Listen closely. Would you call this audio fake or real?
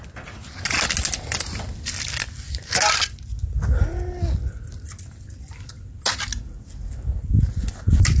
real